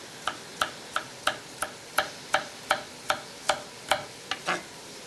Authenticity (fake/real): real